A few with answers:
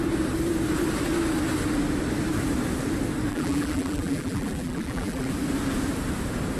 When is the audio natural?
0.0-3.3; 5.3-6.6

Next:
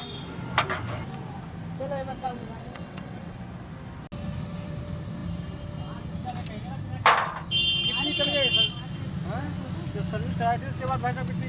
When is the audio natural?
0.0-2.1; 3.4-11.5

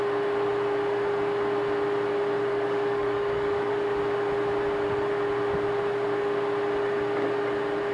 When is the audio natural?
0.0-2.5; 3.7-7.9

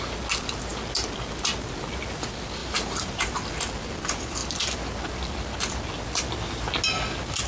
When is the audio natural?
0.0-2.6; 3.3-7.5

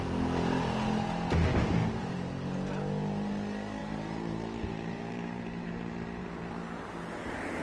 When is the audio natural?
0.0-1.5; 2.3-3.8; 6.5-7.6

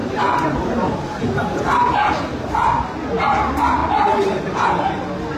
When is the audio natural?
2.1-3.8; 4.4-5.4

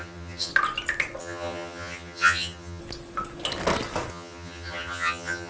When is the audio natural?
0.5-1.2; 2.8-4.1